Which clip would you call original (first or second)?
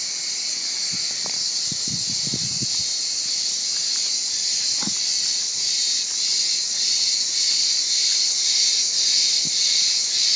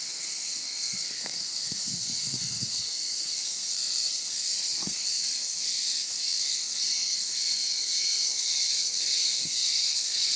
first